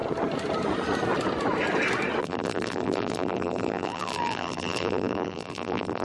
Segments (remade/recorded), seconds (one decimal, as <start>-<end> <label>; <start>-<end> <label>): 0.0-2.2 recorded; 2.2-6.0 remade